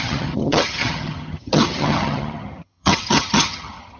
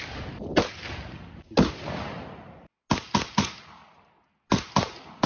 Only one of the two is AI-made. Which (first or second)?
first